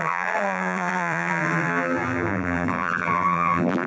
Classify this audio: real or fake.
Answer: fake